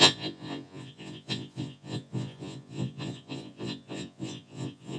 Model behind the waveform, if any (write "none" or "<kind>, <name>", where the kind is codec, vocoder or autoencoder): vocoder, Vocos